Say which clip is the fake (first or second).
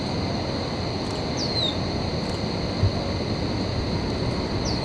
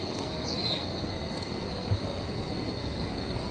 second